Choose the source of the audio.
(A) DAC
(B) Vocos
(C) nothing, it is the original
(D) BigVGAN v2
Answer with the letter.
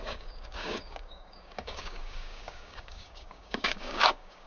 A